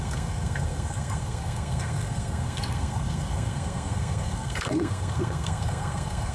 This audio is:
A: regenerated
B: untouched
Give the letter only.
A